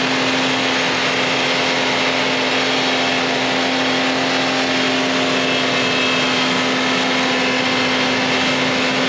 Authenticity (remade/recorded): recorded